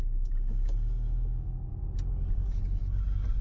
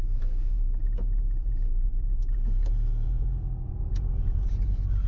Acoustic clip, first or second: first